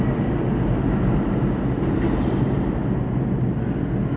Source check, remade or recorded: recorded